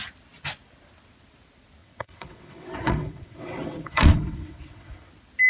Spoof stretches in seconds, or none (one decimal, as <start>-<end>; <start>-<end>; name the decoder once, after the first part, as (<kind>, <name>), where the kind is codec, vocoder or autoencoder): 1.8-5.1 (vocoder, WaveNeXt)